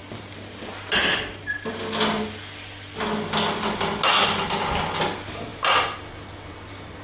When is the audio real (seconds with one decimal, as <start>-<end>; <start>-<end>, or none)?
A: 0.0-7.0